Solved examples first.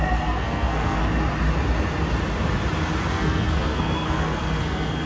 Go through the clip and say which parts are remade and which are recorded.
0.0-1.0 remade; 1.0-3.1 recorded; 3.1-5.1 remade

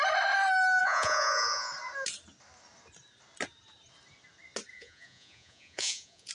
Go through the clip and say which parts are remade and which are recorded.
0.0-0.8 recorded; 0.8-1.7 remade; 1.7-4.7 recorded; 4.7-6.3 remade

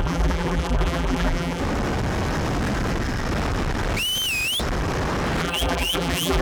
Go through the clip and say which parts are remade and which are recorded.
0.0-1.6 remade; 1.6-5.4 recorded; 5.4-6.4 remade

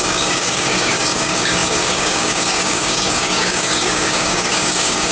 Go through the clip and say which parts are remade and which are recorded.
0.0-5.1 remade

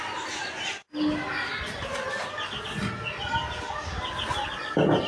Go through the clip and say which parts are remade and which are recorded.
0.0-5.1 recorded

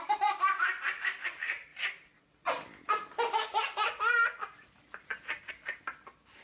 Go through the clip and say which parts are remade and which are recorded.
0.0-6.4 recorded